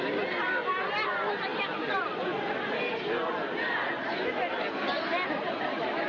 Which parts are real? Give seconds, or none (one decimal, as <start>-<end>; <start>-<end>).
0.0-6.1